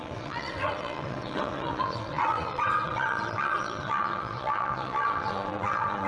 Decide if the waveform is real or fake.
fake